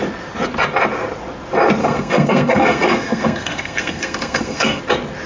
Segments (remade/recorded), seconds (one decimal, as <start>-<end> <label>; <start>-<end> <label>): 0.0-1.8 recorded; 1.8-4.8 remade; 4.8-5.3 recorded